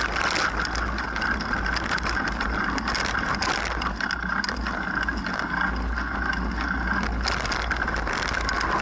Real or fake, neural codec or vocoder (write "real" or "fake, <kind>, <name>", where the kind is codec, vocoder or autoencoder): real